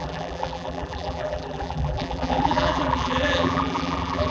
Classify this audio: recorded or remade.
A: remade